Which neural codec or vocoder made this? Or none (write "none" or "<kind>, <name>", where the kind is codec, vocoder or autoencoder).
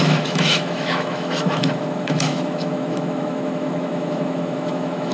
autoencoder, DAC-VAE